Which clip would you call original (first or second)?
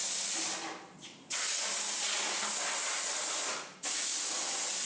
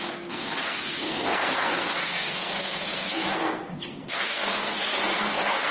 first